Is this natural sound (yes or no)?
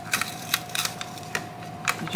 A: no